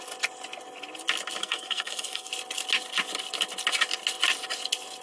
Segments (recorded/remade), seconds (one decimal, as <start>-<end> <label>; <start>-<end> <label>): 0.0-1.4 recorded; 1.4-2.3 remade; 2.3-5.0 recorded